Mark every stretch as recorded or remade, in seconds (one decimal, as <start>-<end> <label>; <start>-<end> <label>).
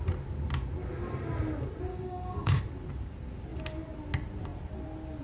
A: 0.0-1.9 recorded; 1.9-2.6 remade; 2.6-5.2 recorded